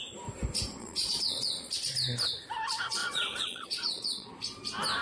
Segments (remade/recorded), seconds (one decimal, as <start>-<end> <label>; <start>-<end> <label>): 0.0-0.8 recorded; 0.8-1.7 remade; 1.7-3.0 recorded; 3.0-4.3 remade; 4.3-5.0 recorded